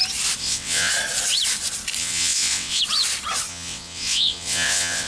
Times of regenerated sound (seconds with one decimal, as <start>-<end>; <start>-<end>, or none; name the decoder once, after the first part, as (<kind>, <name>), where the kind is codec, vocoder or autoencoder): 0.4-0.9 (vocoder, WaveNeXt); 2.0-2.8; 3.5-5.1